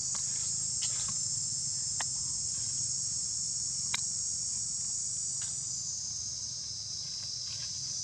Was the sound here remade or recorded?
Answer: recorded